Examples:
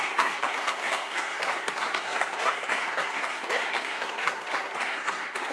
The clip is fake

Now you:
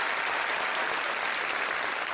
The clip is real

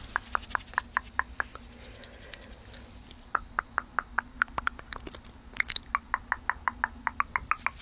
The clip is real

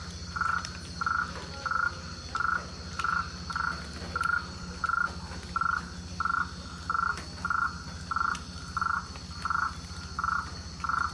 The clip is real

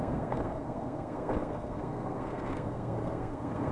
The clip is fake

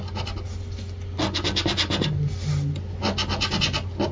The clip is real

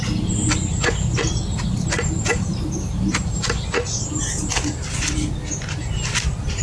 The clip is real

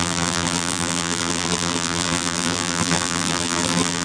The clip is fake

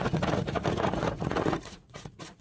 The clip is fake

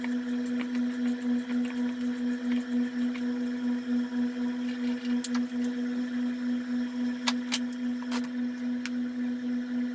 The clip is real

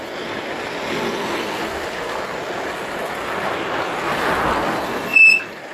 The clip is real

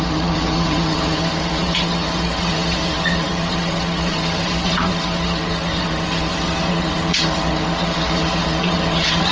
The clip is fake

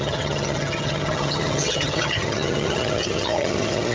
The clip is fake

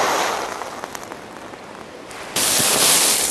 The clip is real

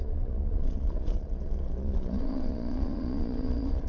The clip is fake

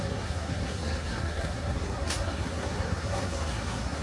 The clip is fake